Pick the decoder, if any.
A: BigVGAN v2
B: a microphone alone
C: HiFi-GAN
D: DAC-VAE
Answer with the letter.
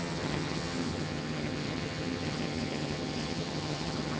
C